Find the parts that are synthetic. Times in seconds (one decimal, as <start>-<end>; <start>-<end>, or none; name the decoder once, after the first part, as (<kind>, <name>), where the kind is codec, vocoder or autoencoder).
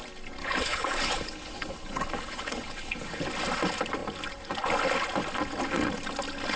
0.4-3.2 (codec, HILCodec)